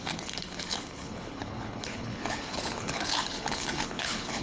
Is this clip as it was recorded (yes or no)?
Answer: no